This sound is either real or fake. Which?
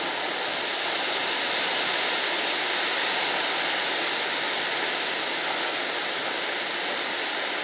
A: real